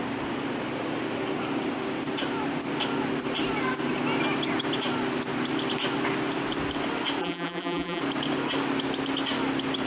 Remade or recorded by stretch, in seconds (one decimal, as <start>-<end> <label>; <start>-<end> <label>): 0.0-7.2 recorded; 7.2-8.0 remade; 8.0-9.9 recorded